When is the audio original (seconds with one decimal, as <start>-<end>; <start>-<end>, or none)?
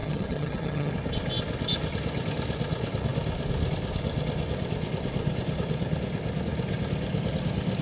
0.9-7.8